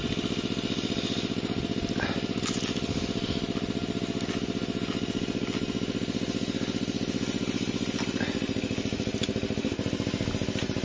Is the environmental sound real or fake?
real